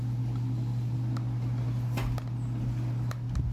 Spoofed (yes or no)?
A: no